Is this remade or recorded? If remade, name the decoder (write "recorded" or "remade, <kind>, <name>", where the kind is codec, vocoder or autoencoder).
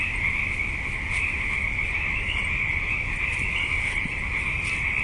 recorded